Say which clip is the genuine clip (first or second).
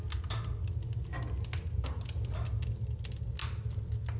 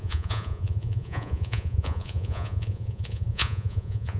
first